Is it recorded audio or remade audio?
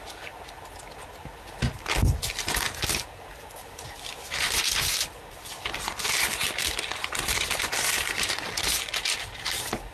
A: recorded